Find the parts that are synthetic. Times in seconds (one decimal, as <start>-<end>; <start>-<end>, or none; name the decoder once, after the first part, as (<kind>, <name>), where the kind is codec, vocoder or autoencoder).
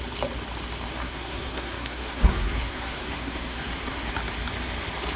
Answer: 1.0-4.1 (codec, SNAC)